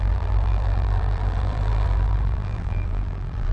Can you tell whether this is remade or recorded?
remade